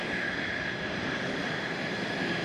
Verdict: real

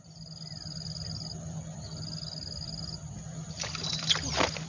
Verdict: real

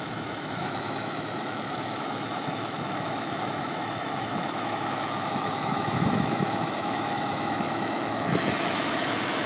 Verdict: fake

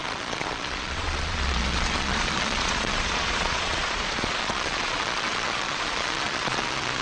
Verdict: fake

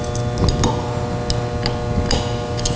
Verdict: real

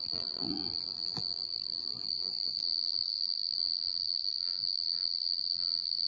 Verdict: fake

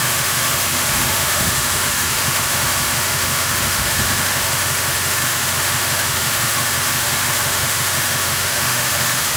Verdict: fake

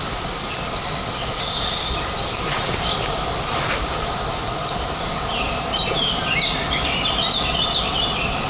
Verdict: real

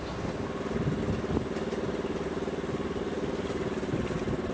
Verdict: real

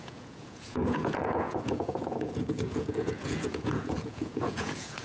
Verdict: fake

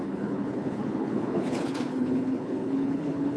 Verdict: fake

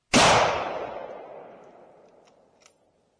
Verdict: real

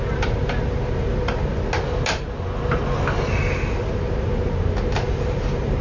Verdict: real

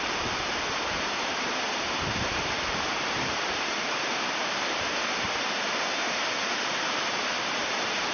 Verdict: fake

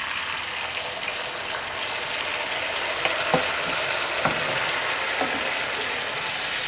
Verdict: real